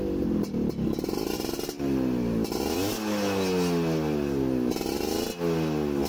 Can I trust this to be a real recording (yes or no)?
yes